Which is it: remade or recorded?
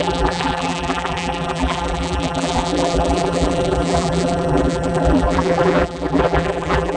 remade